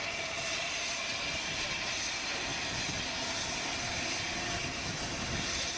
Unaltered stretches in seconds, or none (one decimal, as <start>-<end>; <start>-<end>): 2.3-4.3